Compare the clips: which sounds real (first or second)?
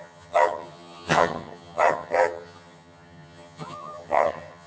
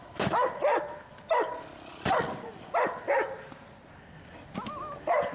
second